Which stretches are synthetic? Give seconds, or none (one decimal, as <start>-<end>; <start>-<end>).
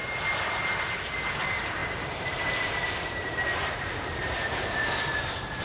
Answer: 1.8-5.6